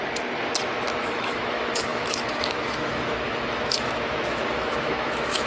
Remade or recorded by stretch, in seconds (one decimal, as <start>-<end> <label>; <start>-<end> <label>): 0.0-1.0 recorded; 1.0-5.5 remade